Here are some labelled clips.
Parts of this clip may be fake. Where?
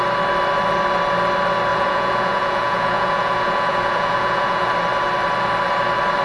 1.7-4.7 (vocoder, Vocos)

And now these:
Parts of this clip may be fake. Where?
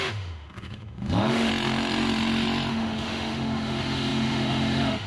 0.0-1.5 (autoencoder, DAC-VAE); 2.7-5.1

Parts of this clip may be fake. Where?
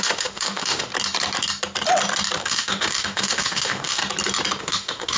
0.0-0.9 (autoencoder, DAC-VAE); 2.4-4.0; 4.6-5.2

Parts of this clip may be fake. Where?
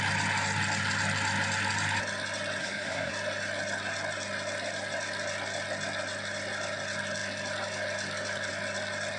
2.6-3.1 (codec, SNAC)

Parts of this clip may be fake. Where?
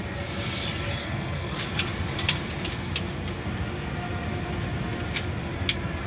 1.0-1.6 (codec, SNAC)